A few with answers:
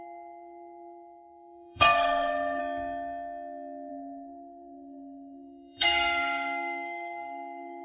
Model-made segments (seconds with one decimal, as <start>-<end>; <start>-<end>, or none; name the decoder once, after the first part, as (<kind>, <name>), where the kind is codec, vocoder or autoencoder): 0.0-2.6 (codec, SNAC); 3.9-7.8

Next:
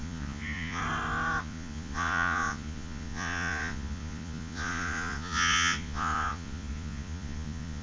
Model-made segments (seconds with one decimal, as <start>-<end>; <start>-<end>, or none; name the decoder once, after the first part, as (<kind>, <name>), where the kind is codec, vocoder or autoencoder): 0.0-0.8 (vocoder, Vocos); 1.4-7.8

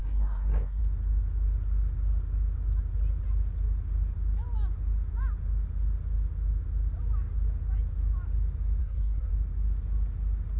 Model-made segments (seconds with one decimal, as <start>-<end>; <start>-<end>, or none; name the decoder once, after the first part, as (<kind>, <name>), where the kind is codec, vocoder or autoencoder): 0.0-0.8 (codec, SNAC); 8.8-9.3

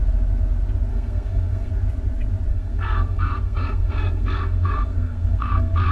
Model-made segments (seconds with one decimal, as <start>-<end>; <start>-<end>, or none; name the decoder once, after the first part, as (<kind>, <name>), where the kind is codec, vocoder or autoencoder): 0.9-1.7 (codec, SNAC); 2.5-5.9

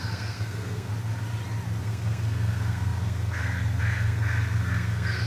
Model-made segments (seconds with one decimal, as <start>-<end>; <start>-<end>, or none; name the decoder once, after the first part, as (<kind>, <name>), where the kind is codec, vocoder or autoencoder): 0.0-0.9 (codec, SNAC); 1.8-5.3